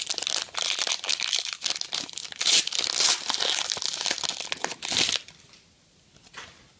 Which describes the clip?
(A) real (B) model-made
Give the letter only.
A